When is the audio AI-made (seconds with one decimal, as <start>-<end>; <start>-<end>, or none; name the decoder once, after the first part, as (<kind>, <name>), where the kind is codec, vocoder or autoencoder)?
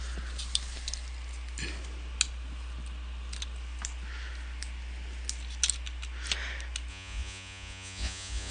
6.9-8.5 (vocoder, Vocos)